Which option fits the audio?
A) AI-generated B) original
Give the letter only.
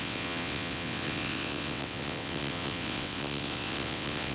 A